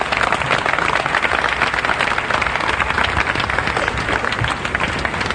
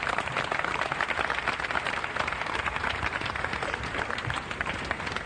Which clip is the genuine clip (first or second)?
first